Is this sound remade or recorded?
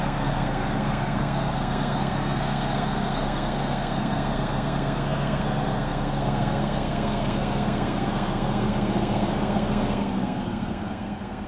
remade